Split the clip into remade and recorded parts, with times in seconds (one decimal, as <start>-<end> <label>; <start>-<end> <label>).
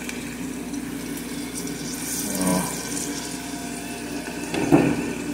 0.0-5.3 recorded